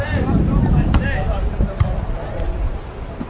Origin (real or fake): fake